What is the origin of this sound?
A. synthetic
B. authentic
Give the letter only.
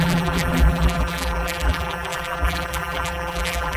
A